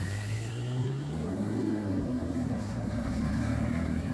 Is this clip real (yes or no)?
no